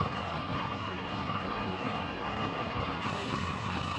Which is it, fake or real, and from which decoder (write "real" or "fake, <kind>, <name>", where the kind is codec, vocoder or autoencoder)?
fake, codec, SNAC